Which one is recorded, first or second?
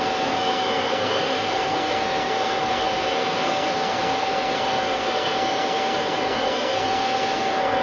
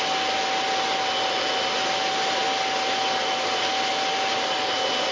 second